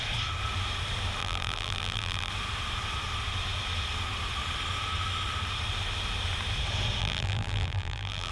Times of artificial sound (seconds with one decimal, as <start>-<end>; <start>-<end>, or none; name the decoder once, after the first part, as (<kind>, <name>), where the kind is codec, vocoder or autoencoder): 1.2-2.3 (vocoder, BigVGAN v2); 7.0-8.3